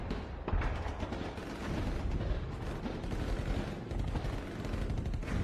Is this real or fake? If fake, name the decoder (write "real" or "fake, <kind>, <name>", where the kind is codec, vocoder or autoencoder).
real